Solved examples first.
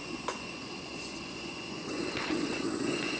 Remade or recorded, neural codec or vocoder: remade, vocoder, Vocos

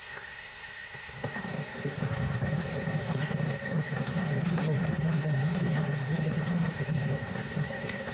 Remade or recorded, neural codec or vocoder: remade, codec, SNAC